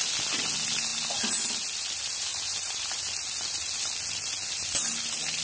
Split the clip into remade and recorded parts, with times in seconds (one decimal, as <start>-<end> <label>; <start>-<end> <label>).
0.0-2.3 recorded; 2.3-3.1 remade; 3.1-5.4 recorded